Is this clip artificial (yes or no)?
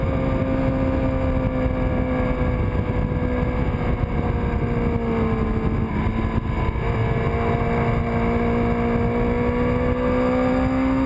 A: no